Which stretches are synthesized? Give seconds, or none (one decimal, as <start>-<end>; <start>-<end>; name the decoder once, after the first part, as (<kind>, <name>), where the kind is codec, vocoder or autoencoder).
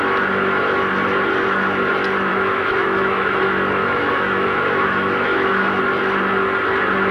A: 2.3-3.4 (autoencoder, DAC-VAE); 3.8-5.8